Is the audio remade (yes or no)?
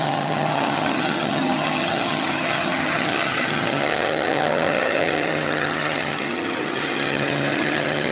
yes